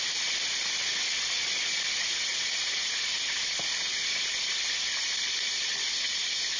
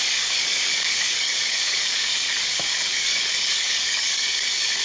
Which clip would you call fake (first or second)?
second